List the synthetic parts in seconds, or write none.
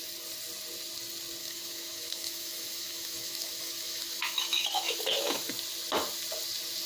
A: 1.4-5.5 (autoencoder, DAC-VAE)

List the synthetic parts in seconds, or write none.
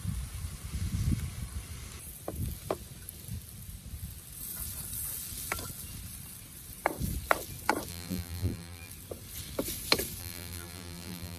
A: 7.9-8.9 (vocoder, BigVGAN v2); 10.2-11.4